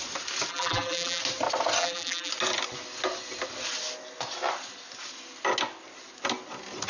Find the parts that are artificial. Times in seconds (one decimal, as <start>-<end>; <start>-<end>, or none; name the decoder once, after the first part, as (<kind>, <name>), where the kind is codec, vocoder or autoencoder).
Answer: 0.5-1.2 (vocoder, BigVGAN v2); 1.8-2.3